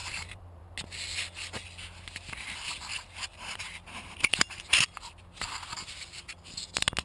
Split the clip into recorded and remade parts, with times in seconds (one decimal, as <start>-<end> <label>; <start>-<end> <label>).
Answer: 0.0-0.6 remade; 0.6-3.3 recorded; 3.3-4.7 remade; 4.7-7.0 recorded